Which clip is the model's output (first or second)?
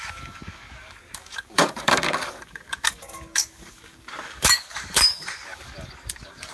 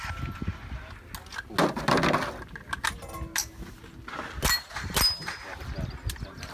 first